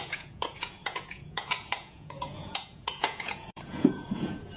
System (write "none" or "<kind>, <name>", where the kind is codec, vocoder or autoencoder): vocoder, Vocos